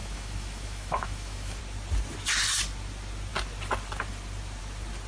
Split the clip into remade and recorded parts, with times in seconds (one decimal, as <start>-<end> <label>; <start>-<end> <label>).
0.0-1.6 remade; 1.6-5.1 recorded